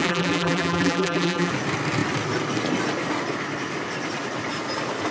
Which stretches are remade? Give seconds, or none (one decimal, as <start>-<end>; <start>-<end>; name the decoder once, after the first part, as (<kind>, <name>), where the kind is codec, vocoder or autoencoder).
0.0-1.5 (vocoder, BigVGAN v2)